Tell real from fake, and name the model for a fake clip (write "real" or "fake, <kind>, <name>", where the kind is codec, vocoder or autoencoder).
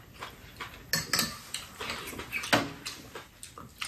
real